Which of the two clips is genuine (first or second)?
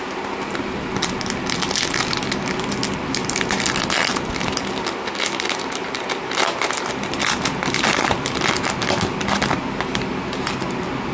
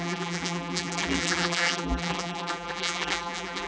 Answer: first